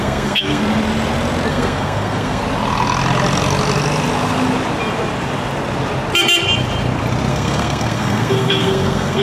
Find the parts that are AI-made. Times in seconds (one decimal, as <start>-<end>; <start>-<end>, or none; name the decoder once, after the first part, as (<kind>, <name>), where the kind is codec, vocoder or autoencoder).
0.0-0.6 (codec, SNAC); 1.5-2.4; 7.3-9.2

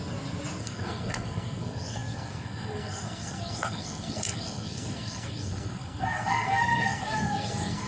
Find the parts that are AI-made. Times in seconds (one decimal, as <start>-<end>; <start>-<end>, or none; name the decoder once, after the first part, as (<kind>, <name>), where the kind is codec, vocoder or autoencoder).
0.6-7.9 (codec, SNAC)

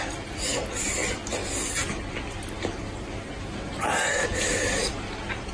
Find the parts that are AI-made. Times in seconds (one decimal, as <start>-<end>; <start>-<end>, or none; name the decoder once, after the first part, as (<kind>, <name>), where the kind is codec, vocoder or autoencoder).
none

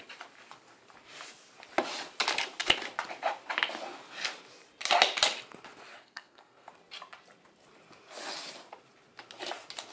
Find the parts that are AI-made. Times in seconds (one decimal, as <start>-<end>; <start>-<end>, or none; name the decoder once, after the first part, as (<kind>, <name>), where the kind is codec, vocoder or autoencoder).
6.0-6.7 (codec, SNAC)

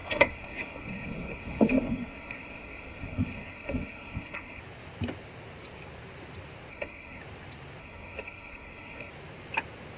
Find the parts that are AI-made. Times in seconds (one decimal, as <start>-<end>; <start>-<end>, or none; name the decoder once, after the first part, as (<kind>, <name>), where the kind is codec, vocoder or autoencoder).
0.0-4.6 (codec, SNAC); 6.7-7.2; 7.8-9.1